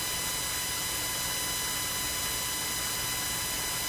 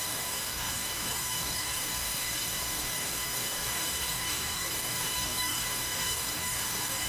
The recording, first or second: first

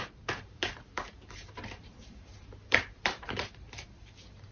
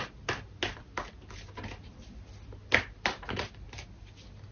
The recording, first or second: second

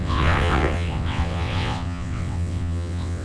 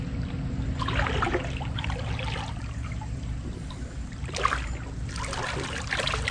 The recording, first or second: second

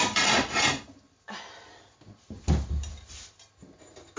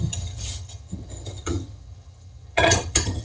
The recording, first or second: first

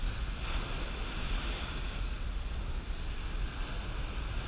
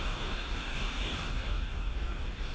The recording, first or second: first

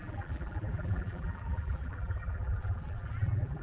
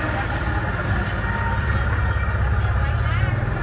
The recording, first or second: second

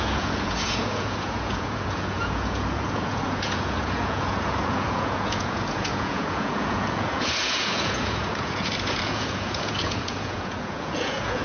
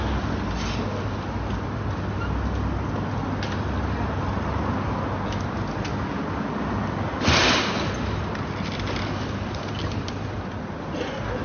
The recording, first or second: second